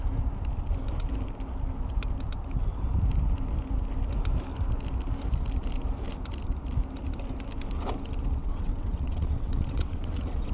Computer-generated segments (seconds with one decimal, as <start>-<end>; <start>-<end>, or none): 8.4-10.5